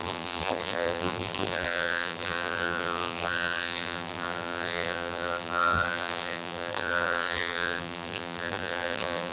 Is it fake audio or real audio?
fake